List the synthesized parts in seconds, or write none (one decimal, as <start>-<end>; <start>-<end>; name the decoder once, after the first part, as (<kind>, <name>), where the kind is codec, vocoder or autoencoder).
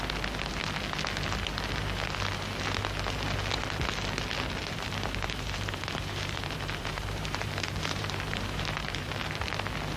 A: 4.6-9.2 (vocoder, BigVGAN v2)